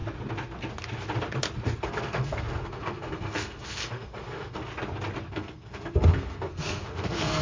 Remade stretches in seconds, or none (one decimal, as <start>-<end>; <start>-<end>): 1.8-4.7; 5.3-7.4